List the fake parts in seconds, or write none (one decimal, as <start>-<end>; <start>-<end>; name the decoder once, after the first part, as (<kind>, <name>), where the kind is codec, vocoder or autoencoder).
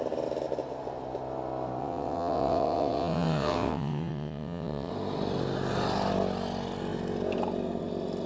1.8-4.9 (vocoder, WaveNeXt)